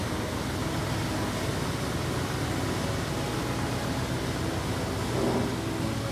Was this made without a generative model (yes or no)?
yes